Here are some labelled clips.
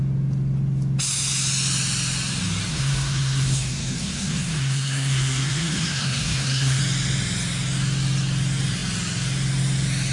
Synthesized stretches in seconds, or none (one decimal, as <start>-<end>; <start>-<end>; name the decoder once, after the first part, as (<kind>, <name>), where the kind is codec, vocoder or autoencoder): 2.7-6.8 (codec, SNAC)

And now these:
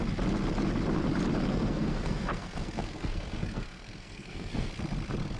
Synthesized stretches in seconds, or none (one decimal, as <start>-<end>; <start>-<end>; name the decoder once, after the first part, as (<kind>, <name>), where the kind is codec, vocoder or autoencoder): 1.5-4.7 (codec, SNAC)

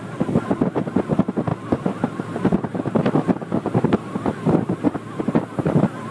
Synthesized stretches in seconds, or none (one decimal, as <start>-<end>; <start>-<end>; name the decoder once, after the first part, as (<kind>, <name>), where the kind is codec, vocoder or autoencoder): none

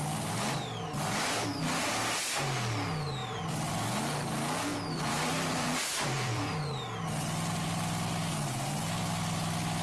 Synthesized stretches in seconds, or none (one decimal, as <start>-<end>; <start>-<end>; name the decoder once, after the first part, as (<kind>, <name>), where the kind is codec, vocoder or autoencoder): 3.2-3.7 (vocoder, BigVGAN v2); 4.7-6.6